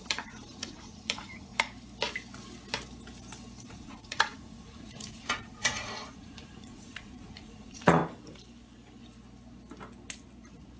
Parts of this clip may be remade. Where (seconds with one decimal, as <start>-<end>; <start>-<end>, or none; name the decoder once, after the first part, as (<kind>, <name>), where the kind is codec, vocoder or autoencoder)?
0.0-1.5 (vocoder, Vocos); 3.7-8.0